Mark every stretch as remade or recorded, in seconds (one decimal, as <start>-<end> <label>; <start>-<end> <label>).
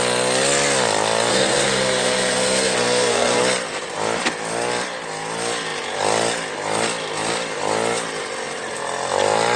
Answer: 0.0-1.3 recorded; 1.3-3.4 remade; 3.4-9.6 recorded